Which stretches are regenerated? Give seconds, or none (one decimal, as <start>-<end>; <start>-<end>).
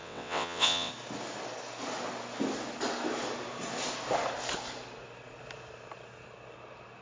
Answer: 0.0-0.9